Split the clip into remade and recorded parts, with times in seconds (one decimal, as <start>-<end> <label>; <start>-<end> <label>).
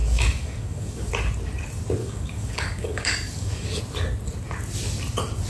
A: 0.0-1.1 remade; 1.1-2.0 recorded; 2.0-3.8 remade; 3.8-5.5 recorded